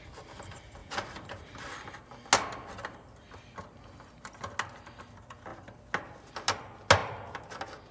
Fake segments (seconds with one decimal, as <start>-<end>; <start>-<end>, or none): none